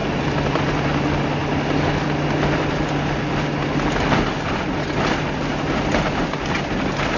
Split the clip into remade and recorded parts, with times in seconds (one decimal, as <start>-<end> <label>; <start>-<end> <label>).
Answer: 0.0-0.8 remade; 0.8-7.2 recorded